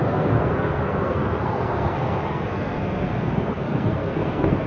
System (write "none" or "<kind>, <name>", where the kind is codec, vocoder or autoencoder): codec, SNAC